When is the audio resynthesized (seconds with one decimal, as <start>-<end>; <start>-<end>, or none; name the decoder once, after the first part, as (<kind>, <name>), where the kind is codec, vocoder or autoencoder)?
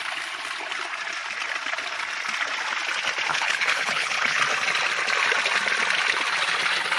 3.3-4.4 (codec, HILCodec)